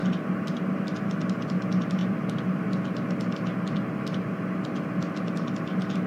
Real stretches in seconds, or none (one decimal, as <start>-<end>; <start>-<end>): 0.0-6.1